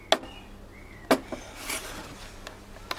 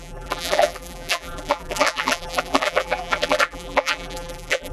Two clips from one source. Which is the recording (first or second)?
first